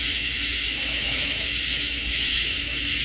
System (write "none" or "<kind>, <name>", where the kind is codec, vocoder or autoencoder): autoencoder, DAC-VAE